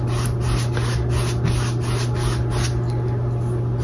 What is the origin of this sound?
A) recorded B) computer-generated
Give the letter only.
A